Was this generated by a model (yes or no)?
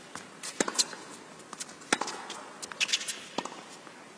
no